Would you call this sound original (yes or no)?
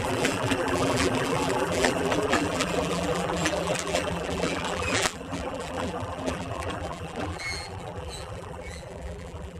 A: no